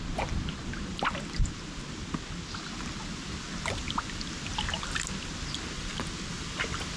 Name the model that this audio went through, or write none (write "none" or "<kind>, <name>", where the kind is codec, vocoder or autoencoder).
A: none